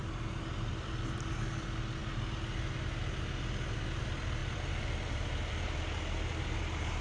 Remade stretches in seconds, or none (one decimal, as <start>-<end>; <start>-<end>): 4.4-5.8